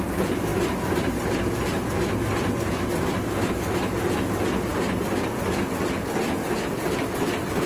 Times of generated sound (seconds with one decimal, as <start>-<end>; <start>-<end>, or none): 4.7-7.7